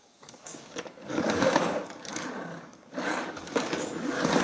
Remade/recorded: remade